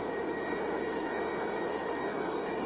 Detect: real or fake real